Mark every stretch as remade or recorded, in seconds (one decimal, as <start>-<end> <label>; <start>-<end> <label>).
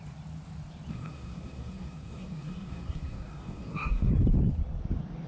0.0-0.9 recorded; 0.9-4.1 remade; 4.1-5.3 recorded